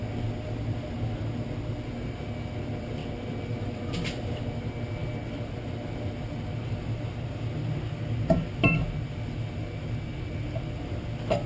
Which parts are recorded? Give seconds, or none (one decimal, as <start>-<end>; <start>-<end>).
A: 0.0-11.5